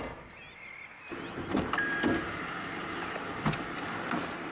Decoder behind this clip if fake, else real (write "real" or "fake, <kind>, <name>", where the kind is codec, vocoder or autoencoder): real